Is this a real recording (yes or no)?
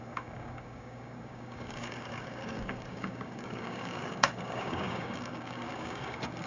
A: no